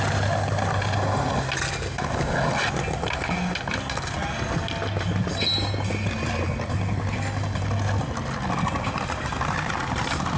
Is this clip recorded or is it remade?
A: recorded